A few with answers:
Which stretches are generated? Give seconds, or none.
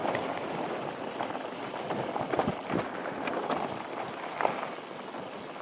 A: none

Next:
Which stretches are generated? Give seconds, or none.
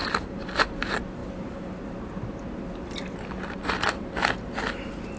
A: 0.0-0.7 (vocoder, BigVGAN v2); 1.2-4.1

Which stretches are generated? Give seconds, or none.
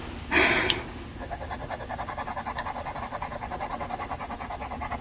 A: none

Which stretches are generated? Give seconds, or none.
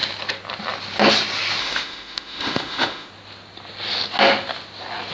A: 1.6-3.1 (autoencoder, DAC-VAE)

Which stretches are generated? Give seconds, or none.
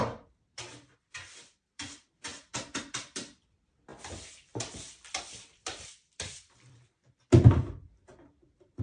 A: 0.0-3.9 (vocoder, BigVGAN v2); 5.2-8.8